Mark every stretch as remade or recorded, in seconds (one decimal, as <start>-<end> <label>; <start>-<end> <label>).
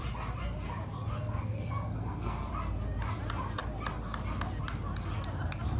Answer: 0.0-1.1 recorded; 1.1-2.5 remade; 2.5-5.8 recorded